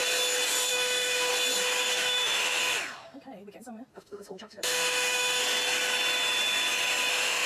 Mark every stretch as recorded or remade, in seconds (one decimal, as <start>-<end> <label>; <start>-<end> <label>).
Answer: 0.0-0.7 recorded; 0.7-1.3 remade; 1.3-1.9 recorded; 1.9-2.6 remade; 2.6-3.9 recorded; 3.9-5.4 remade; 5.4-7.1 recorded; 7.1-7.5 remade